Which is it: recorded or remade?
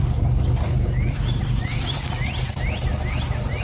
recorded